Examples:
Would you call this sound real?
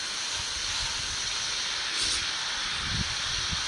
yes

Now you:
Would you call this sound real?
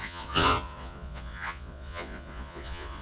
no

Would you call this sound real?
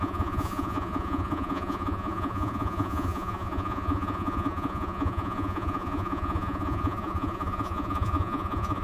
no